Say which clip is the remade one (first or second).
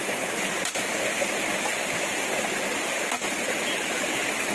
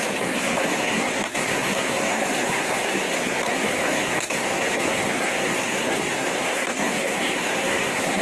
second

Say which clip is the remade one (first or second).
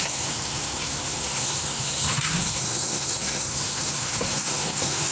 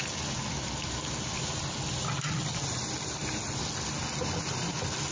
first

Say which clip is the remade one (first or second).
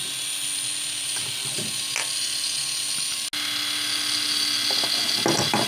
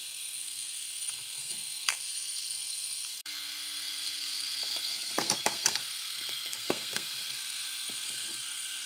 second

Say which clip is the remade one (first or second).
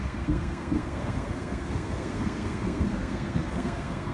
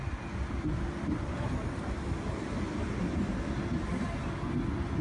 first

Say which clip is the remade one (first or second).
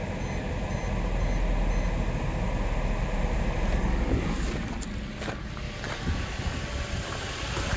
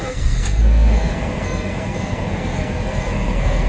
second